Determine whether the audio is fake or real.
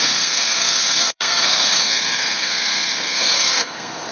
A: fake